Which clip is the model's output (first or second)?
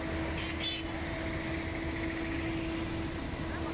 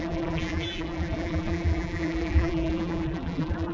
second